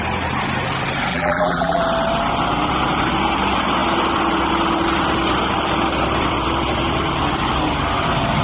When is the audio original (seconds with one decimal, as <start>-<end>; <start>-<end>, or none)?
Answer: 0.0-1.1; 1.8-8.4